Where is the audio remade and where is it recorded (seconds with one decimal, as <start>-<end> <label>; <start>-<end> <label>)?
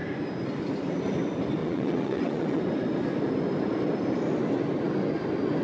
0.0-1.6 recorded; 1.6-2.6 remade; 2.6-5.6 recorded